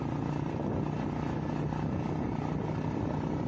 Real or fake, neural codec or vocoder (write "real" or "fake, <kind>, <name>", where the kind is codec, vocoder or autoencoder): real